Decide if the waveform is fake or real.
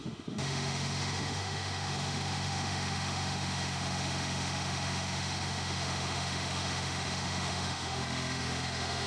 fake